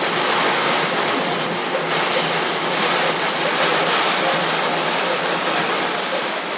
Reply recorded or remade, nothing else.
recorded